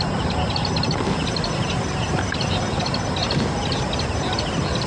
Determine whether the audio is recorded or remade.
recorded